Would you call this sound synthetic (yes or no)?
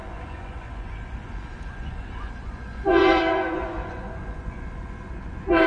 yes